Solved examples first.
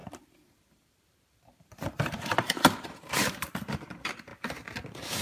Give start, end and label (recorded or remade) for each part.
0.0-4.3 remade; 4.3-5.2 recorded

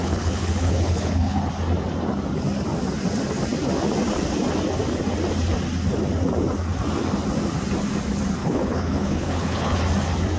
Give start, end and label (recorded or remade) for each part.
0.0-1.5 remade; 1.5-8.4 recorded; 8.4-9.8 remade; 9.8-10.4 recorded

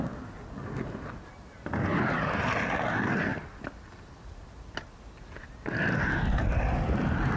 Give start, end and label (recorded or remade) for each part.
0.0-7.4 recorded